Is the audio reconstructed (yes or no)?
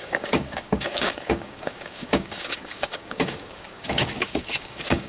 yes